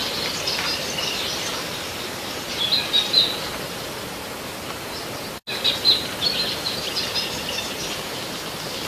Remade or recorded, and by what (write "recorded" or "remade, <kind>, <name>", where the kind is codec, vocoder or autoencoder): recorded